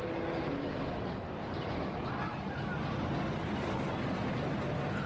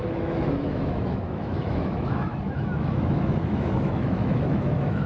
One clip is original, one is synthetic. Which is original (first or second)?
first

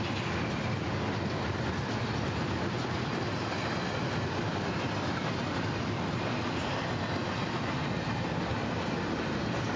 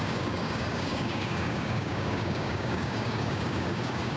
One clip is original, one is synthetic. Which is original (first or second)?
first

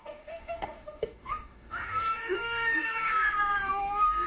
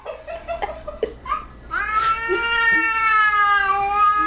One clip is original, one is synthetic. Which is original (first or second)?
second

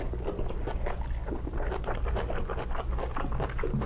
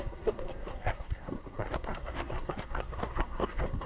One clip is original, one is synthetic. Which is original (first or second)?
first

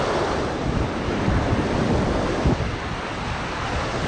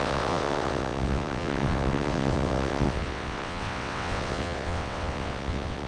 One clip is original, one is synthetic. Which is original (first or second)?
first